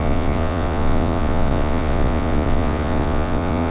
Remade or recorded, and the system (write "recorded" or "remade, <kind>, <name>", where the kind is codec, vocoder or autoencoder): remade, vocoder, Vocos